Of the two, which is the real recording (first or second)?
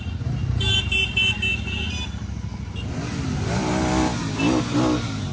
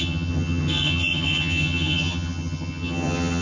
first